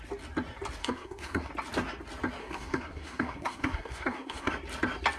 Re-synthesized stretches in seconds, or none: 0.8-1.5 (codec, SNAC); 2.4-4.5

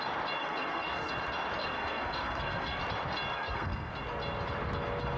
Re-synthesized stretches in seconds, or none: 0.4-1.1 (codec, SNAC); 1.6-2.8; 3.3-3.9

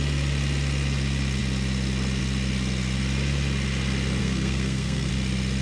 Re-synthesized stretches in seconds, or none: 4.2-5.1 (codec, SNAC)